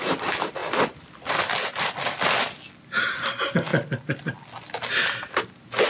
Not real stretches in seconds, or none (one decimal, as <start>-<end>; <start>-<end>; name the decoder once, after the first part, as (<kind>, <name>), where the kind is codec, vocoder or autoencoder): none